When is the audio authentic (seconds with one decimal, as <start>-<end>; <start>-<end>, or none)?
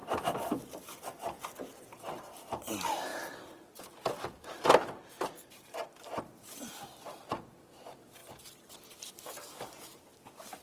0.0-10.6